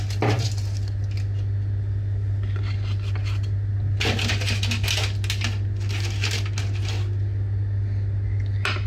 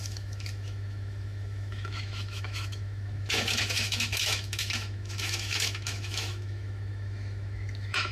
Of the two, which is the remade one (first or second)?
second